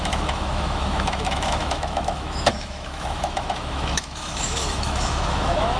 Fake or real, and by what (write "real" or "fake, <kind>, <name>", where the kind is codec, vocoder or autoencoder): fake, autoencoder, DAC-VAE